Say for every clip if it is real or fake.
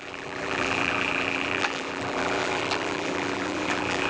fake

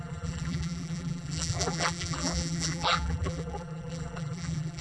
fake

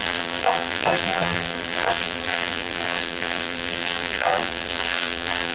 fake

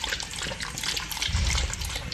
fake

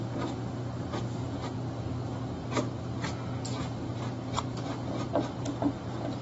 real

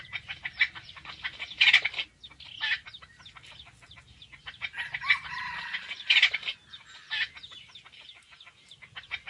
real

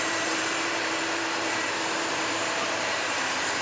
fake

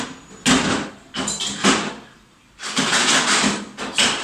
real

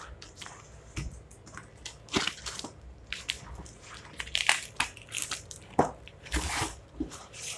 real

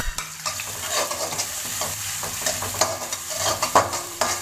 fake